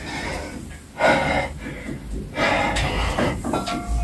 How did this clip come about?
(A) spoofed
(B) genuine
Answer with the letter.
B